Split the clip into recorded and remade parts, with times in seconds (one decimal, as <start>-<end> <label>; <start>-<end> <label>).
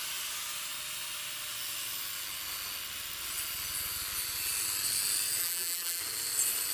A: 0.0-5.4 recorded; 5.4-6.0 remade; 6.0-6.7 recorded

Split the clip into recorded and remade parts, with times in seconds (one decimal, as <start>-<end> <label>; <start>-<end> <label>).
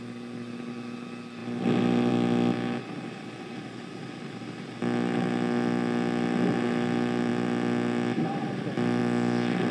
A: 0.0-9.7 recorded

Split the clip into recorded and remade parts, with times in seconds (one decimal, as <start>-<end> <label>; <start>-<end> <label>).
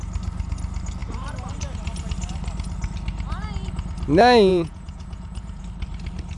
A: 0.0-4.5 recorded; 4.5-5.6 remade; 5.6-6.4 recorded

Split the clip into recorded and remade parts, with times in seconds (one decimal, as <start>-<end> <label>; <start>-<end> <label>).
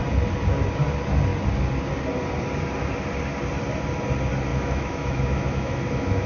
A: 0.0-4.5 recorded; 4.5-6.3 remade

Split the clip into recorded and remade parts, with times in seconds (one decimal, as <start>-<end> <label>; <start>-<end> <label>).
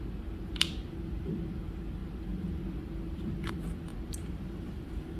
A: 0.0-5.2 remade